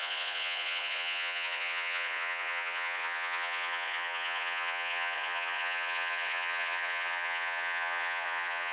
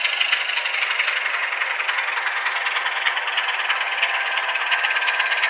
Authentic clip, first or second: second